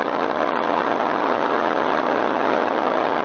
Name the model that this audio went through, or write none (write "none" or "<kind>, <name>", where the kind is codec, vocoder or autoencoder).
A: vocoder, HiFi-GAN